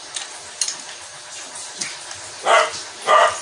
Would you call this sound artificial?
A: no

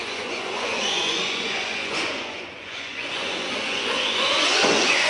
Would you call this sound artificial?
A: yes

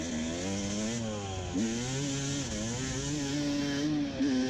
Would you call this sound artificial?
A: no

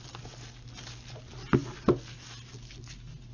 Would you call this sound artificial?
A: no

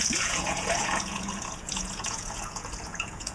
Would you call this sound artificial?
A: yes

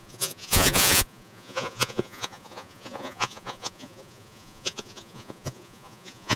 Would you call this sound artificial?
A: yes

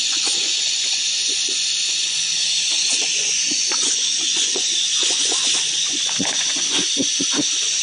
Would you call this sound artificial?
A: yes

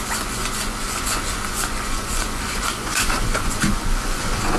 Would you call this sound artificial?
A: yes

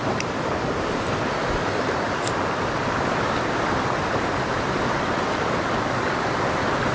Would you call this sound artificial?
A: no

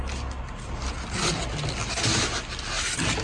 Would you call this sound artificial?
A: no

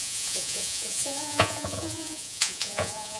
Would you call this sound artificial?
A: yes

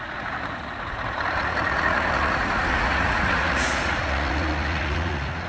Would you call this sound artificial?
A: yes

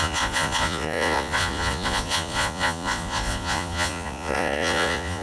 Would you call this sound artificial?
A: yes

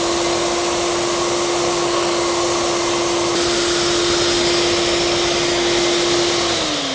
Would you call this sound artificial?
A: no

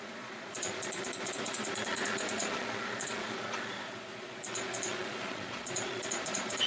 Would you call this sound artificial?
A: yes